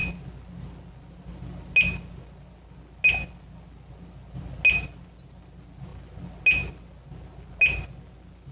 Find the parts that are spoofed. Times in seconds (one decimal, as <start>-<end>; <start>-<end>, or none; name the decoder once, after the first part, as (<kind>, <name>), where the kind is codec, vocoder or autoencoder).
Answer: none